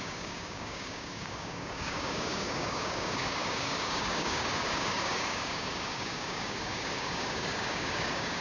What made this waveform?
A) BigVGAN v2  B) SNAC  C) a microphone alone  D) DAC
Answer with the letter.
D